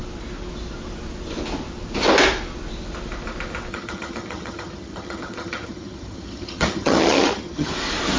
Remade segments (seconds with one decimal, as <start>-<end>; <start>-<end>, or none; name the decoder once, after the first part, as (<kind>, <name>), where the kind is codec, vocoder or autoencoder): 3.7-7.7 (vocoder, HiFi-GAN)